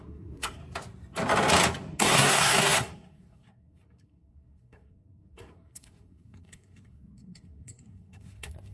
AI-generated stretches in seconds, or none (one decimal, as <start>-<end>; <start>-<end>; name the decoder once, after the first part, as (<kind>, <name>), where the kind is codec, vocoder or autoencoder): 0.0-0.6 (codec, SNAC); 2.0-8.7

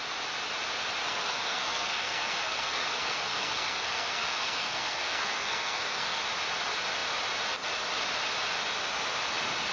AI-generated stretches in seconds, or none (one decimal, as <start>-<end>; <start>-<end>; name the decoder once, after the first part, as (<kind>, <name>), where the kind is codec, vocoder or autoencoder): 1.0-6.2 (codec, SNAC)

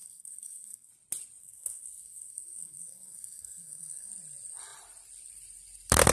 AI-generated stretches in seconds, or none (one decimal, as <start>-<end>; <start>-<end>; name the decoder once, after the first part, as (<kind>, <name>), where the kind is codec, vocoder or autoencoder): 0.0-0.9 (codec, SNAC); 1.4-4.1

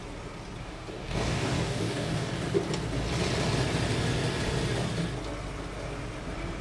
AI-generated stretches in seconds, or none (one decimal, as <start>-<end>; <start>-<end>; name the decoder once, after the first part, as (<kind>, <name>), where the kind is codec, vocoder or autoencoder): 0.6-2.3 (codec, DAC)

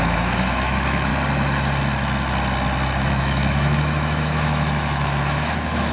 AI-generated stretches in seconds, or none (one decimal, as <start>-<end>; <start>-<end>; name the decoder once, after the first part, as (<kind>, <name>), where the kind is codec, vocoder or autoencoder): 0.0-1.1 (autoencoder, DAC-VAE); 3.1-5.9

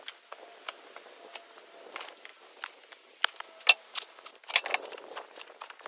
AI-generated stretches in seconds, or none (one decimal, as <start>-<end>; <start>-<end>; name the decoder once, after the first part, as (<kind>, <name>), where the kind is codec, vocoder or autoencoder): none